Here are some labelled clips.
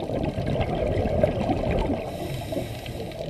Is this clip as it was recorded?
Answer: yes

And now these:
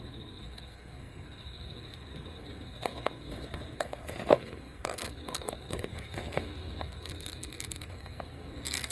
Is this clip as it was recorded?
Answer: no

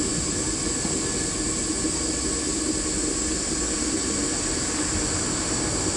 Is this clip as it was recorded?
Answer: yes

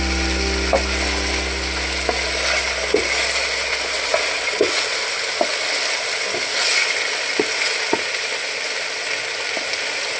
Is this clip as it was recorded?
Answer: yes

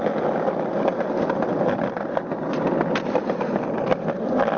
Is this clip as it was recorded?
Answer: yes